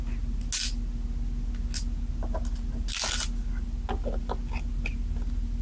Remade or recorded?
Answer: recorded